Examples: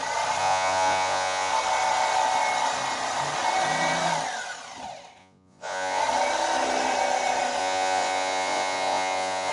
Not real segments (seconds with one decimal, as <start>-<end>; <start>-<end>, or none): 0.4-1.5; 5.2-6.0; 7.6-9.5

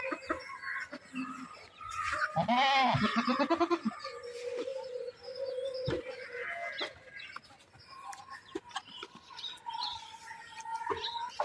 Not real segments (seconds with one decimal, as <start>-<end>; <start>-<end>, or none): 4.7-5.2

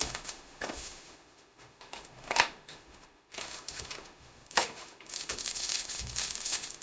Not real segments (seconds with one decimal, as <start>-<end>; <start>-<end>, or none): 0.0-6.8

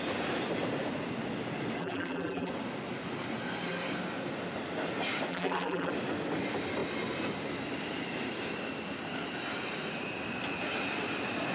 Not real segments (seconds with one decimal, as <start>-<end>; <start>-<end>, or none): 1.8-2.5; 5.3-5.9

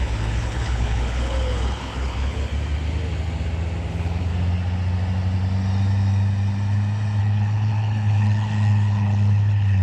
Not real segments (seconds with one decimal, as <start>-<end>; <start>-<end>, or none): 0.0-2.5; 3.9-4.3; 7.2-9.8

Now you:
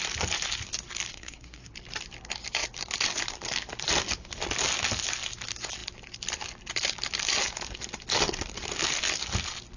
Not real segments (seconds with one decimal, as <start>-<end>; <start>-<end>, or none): 1.1-1.7

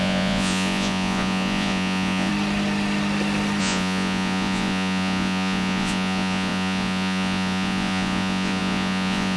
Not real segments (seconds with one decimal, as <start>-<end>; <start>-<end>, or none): 0.0-2.3; 3.6-9.4